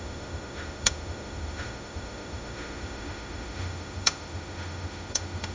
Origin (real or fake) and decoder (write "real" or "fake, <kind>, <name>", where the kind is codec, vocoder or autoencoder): fake, autoencoder, DAC-VAE